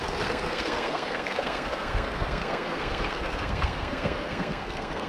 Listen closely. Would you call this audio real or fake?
fake